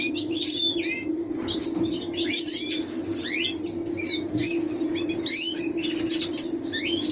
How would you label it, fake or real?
real